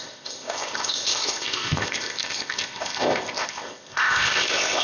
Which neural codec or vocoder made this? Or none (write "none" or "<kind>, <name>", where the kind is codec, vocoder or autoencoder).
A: codec, ZipCodec